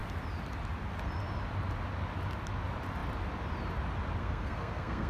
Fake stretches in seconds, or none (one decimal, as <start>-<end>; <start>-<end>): 4.2-5.1